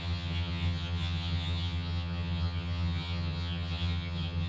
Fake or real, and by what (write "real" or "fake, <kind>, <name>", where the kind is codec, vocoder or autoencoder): fake, vocoder, HiFi-GAN